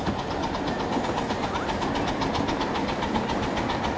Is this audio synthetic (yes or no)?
no